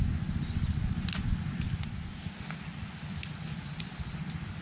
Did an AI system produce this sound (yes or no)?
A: no